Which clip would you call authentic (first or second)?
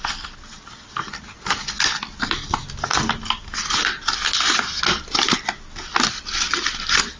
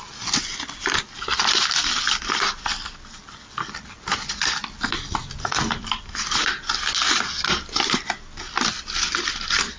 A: first